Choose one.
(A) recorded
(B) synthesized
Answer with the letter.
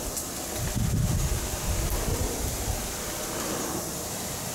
A